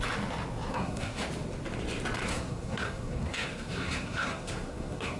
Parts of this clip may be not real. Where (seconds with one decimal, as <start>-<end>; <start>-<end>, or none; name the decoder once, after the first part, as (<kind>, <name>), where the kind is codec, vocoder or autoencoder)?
0.7-1.2 (codec, SNAC); 2.3-5.2